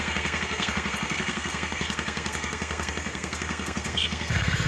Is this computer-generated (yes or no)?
yes